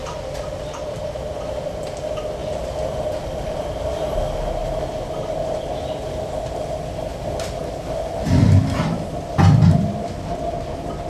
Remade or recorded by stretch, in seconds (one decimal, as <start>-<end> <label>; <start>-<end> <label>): 0.0-0.6 remade; 0.6-2.4 recorded; 2.4-4.0 remade; 4.0-4.6 recorded; 4.6-5.7 remade; 5.7-7.6 recorded; 7.6-9.1 remade; 9.1-11.1 recorded